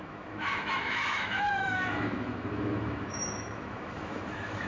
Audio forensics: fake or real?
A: fake